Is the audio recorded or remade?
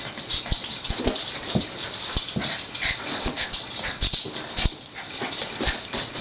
recorded